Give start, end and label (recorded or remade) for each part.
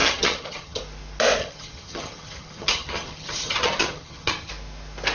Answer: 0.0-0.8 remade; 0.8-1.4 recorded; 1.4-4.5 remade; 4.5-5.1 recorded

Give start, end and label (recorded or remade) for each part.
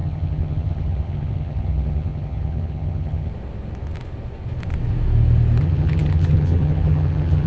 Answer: 0.0-3.3 remade; 3.3-5.6 recorded; 5.6-7.5 remade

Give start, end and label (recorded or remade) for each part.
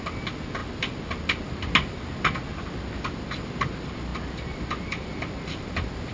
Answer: 0.0-6.1 recorded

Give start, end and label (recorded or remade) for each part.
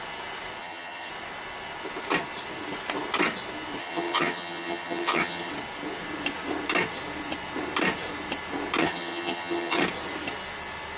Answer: 0.0-0.6 recorded; 0.6-1.1 remade; 1.1-3.8 recorded; 3.8-5.5 remade; 5.5-8.8 recorded; 8.8-9.8 remade; 9.8-11.0 recorded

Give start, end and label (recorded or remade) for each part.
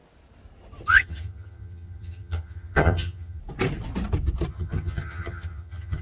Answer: 0.0-0.9 recorded; 0.9-3.4 remade; 3.4-4.5 recorded; 4.5-6.0 remade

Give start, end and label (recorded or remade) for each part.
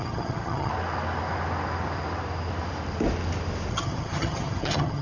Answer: 0.0-0.7 remade; 0.7-3.7 recorded; 3.7-5.0 remade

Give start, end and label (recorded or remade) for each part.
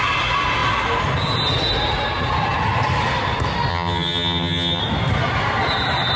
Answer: 0.0-3.7 recorded; 3.7-4.8 remade; 4.8-6.2 recorded